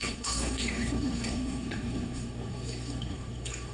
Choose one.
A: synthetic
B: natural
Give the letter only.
A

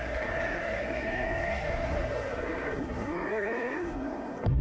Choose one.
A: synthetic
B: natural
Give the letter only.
A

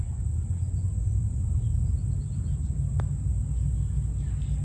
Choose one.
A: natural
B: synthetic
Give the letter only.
A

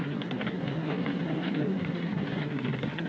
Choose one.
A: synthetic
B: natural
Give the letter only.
A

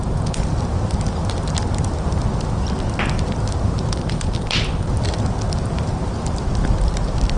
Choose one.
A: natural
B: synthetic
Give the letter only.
A